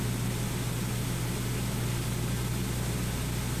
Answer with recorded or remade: recorded